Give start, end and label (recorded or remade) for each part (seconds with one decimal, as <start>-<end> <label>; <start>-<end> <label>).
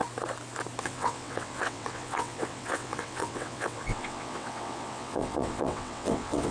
0.0-0.8 recorded; 0.8-6.5 remade